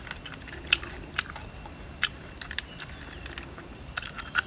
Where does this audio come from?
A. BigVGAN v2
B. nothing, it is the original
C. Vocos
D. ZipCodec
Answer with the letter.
B